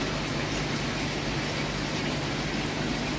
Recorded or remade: recorded